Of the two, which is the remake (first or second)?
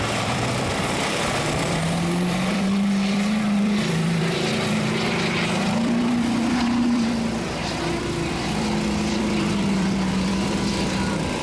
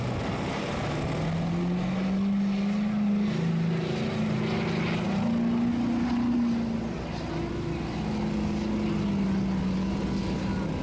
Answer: first